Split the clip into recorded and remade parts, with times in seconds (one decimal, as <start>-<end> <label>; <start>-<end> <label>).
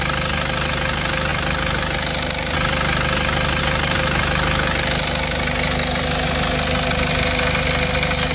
0.0-8.3 recorded